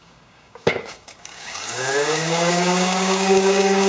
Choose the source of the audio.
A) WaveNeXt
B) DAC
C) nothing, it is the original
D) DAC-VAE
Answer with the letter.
B